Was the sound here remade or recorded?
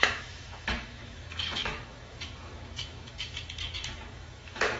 remade